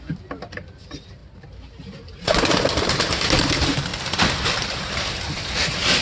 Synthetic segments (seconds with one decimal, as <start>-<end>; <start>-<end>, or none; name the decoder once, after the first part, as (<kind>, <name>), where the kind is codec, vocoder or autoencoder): 0.0-6.0 (vocoder, BigVGAN v2)